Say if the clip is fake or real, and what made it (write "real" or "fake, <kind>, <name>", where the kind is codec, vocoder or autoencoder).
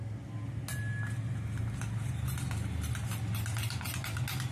real